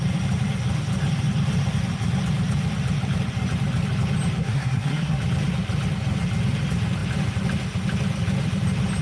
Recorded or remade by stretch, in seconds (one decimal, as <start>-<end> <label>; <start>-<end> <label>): 0.0-4.4 recorded; 4.4-5.2 remade; 5.2-9.0 recorded